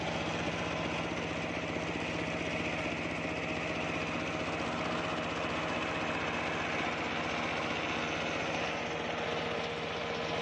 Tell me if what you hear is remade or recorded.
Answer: recorded